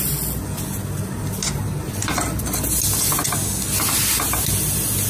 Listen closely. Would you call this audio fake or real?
real